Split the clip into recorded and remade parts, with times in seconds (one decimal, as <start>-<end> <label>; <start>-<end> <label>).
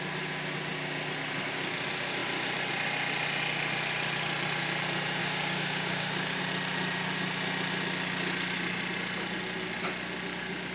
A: 0.0-5.2 recorded; 5.2-6.4 remade; 6.4-10.7 recorded